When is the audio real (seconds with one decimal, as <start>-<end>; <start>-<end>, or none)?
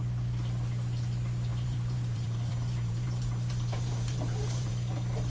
0.0-1.5; 4.7-5.3